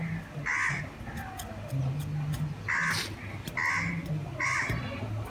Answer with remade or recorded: recorded